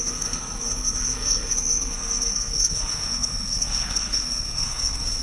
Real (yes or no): no